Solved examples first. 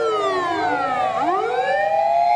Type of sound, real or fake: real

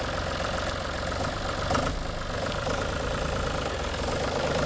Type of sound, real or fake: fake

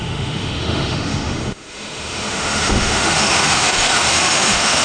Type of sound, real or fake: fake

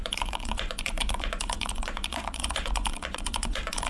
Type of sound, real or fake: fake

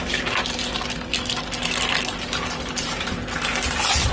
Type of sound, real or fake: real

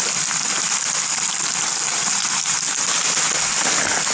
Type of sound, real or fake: real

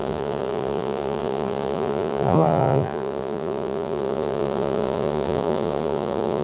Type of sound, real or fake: fake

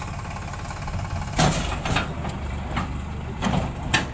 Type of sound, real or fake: real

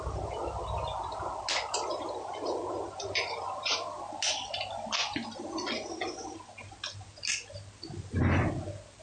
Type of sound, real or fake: real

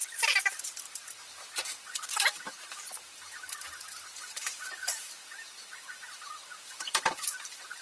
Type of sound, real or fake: fake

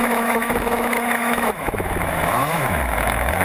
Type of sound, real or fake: fake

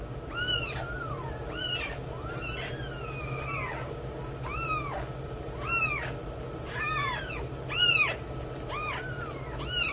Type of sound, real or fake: real